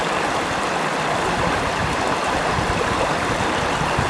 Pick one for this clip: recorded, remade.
recorded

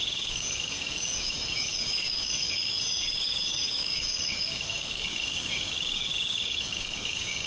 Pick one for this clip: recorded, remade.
remade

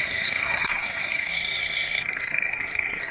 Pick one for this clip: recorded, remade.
remade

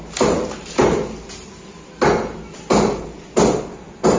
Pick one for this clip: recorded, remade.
recorded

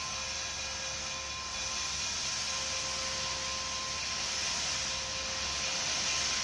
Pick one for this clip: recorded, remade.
recorded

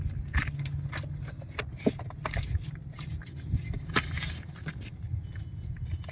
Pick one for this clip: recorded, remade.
recorded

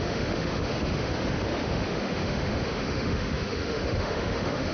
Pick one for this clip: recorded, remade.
remade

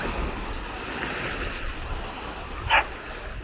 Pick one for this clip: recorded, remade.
recorded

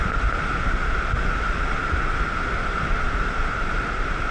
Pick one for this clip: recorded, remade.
recorded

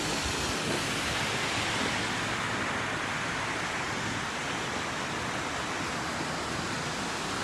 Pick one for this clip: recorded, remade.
recorded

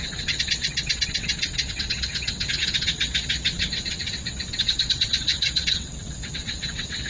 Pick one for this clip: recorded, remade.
remade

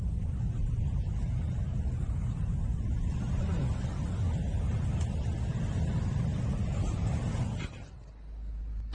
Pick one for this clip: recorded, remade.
recorded